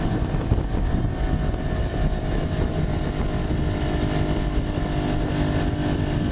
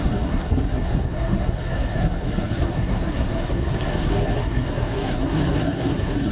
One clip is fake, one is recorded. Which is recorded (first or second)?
first